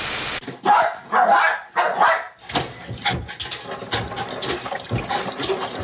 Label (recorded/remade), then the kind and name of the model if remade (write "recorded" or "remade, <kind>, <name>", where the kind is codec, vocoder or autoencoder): recorded